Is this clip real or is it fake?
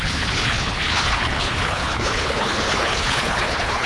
fake